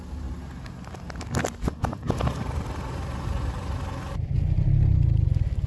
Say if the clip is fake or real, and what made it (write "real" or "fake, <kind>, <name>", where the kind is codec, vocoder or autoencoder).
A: real